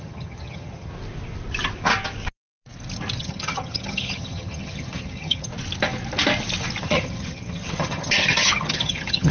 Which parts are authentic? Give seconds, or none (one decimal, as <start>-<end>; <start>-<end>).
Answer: 0.9-3.2; 5.5-6.8